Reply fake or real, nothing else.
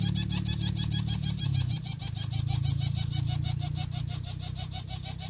real